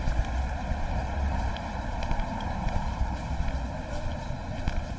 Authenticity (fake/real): fake